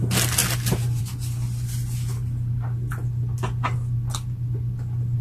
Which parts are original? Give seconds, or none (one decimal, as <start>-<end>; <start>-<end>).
0.0-5.2